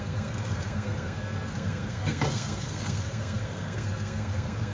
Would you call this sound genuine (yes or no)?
no